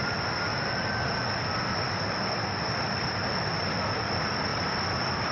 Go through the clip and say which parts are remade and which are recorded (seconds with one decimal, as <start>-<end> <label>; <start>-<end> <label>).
0.0-5.3 recorded